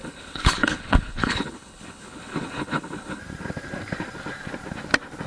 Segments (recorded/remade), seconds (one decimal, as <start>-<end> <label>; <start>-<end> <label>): 0.0-3.2 remade; 3.2-5.3 recorded